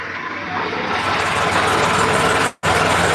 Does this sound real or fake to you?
real